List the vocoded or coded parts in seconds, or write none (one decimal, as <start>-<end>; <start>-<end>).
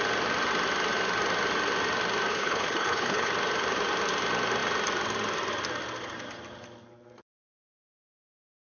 2.3-3.3